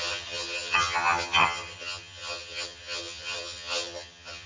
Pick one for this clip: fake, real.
fake